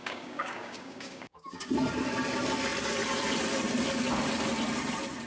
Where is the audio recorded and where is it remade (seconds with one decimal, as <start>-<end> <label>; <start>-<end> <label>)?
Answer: 0.0-1.7 remade; 1.7-5.3 recorded